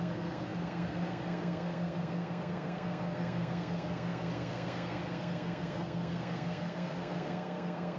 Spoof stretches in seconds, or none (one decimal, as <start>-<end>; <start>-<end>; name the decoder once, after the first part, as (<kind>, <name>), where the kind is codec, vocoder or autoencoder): 0.0-8.0 (codec, SNAC)